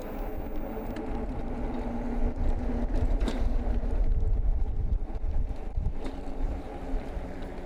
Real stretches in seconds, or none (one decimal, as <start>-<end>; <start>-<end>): 0.0-3.2; 6.8-7.7